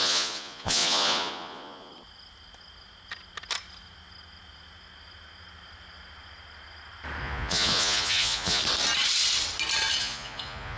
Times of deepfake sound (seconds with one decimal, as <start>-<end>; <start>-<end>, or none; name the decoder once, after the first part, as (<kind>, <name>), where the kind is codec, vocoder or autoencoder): 0.0-1.9 (vocoder, Vocos); 7.2-8.6; 10.0-10.8